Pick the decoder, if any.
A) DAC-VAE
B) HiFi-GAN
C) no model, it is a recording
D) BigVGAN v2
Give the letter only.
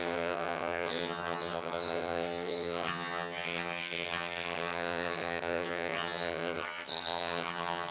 B